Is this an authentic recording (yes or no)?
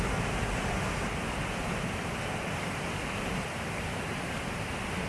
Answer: yes